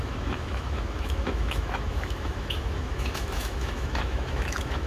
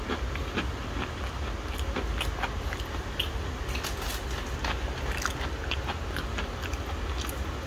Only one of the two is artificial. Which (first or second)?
first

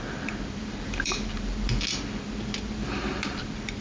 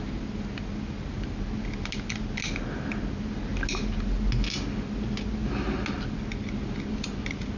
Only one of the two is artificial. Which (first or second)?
first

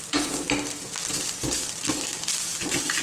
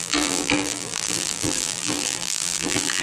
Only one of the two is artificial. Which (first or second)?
second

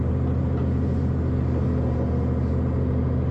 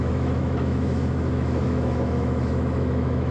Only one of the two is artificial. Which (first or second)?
second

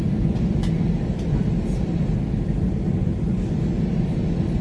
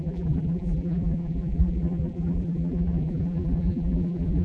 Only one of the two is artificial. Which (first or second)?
second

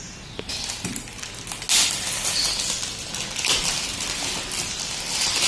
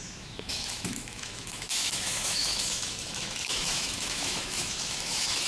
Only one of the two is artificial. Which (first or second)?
second